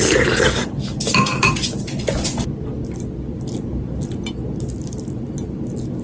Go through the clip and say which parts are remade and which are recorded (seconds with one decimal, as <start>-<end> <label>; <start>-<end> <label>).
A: 0.0-6.0 recorded